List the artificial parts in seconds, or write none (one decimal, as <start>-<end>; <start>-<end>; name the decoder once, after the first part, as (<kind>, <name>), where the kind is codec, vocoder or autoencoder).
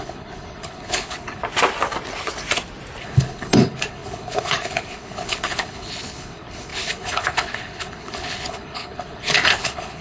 0.0-1.4 (codec, HILCodec); 3.0-10.0